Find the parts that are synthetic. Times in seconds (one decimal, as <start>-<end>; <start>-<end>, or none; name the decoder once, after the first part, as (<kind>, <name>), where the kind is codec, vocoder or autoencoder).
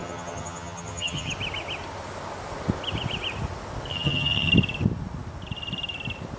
0.0-1.3 (vocoder, HiFi-GAN); 3.9-4.5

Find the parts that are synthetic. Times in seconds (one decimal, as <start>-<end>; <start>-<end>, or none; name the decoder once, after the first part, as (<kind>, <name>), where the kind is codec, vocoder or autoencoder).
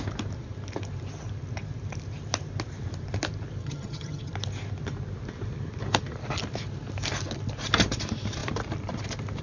3.6-4.3 (vocoder, HiFi-GAN)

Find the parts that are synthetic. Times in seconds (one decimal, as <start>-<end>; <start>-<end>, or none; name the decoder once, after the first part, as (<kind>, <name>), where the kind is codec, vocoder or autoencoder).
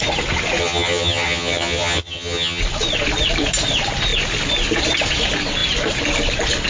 0.6-2.6 (vocoder, HiFi-GAN)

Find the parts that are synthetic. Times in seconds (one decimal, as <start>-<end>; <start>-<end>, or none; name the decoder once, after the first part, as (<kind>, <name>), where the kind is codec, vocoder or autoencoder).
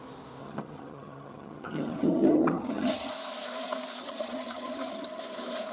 0.4-3.1 (vocoder, HiFi-GAN); 4.0-5.2